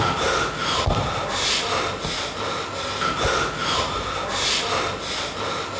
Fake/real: real